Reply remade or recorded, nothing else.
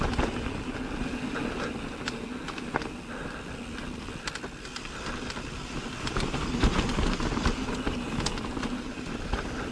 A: recorded